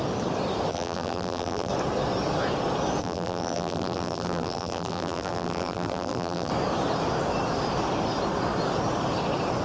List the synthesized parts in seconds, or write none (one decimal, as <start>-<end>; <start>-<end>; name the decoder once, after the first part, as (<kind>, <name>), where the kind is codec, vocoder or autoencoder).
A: 0.7-1.7 (vocoder, BigVGAN v2); 3.0-6.5

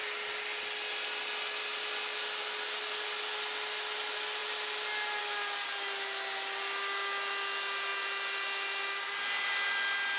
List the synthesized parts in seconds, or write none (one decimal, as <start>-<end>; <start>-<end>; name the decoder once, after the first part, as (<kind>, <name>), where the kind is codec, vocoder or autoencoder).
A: none